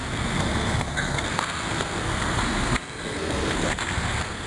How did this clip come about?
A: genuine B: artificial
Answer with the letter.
B